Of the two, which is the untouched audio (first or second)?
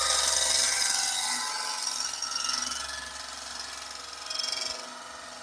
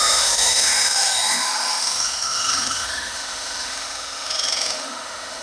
first